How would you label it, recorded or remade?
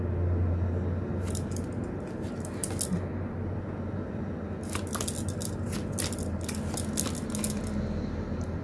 recorded